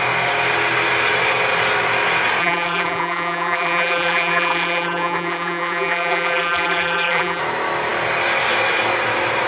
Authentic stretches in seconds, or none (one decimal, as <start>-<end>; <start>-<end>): 0.0-2.4; 7.4-9.5